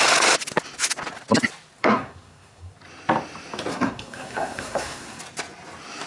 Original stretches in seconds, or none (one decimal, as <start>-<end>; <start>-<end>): 0.0-1.8; 2.7-3.7; 5.2-6.1